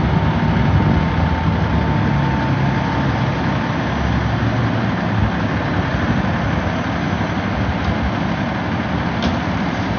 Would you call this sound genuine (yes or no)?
yes